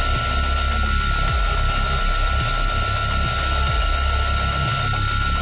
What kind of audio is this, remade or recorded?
recorded